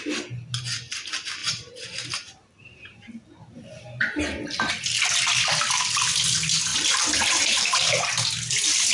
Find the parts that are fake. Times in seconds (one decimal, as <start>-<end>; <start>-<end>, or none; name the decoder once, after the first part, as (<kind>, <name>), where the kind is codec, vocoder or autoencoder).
1.4-4.7 (vocoder, BigVGAN v2); 6.7-8.0